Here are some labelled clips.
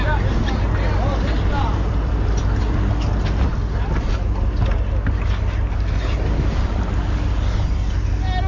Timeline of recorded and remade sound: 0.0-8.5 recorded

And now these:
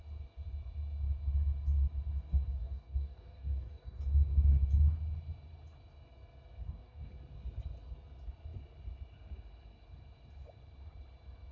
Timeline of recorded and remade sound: 0.0-2.3 recorded; 2.3-4.0 remade; 4.0-6.6 recorded; 6.6-7.1 remade; 7.1-11.5 recorded

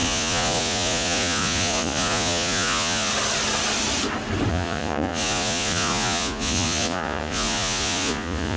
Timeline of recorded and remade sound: 0.0-3.1 remade; 3.1-4.5 recorded; 4.5-8.6 remade

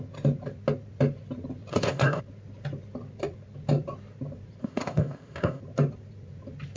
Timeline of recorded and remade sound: 0.0-1.7 recorded; 1.7-2.2 remade; 2.2-4.6 recorded; 4.6-5.6 remade; 5.6-6.8 recorded

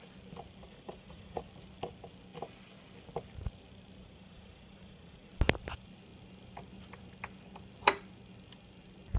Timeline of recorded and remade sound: 0.0-0.6 recorded; 0.6-1.4 remade; 1.4-4.0 recorded; 4.0-5.3 remade; 5.3-9.2 recorded

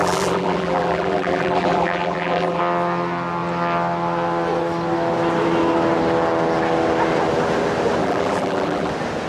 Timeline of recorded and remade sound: 0.0-2.6 remade; 2.6-8.0 recorded; 8.0-8.9 remade; 8.9-9.3 recorded

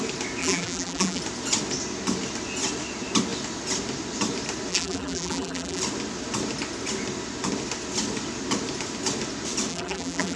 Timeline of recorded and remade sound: 0.0-0.4 recorded; 0.4-1.2 remade; 1.2-4.7 recorded; 4.7-5.8 remade; 5.8-9.7 recorded; 9.7-10.4 remade

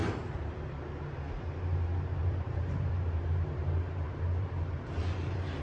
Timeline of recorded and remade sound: 0.0-1.4 remade; 1.4-2.2 recorded; 2.2-5.6 remade